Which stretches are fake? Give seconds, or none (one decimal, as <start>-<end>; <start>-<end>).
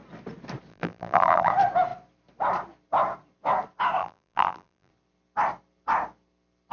0.7-1.5; 4.0-4.9